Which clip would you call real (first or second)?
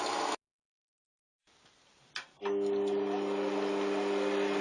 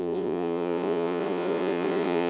first